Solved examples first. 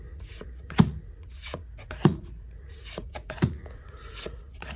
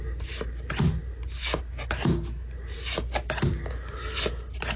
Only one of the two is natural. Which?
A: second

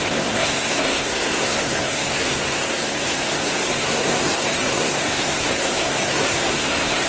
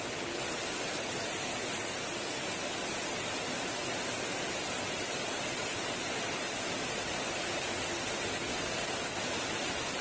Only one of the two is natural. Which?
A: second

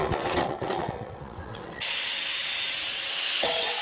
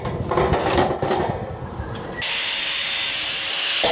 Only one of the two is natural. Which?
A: second